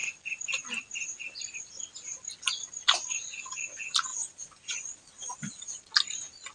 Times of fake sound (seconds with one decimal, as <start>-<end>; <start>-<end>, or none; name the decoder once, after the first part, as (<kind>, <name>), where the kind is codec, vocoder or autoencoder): 4.1-5.8 (vocoder, Vocos)